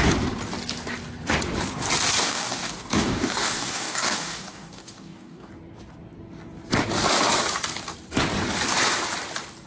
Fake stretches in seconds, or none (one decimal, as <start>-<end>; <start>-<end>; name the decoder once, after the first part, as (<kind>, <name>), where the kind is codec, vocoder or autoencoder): 2.2-5.5 (codec, DAC)